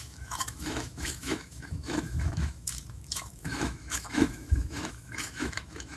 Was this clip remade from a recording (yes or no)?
yes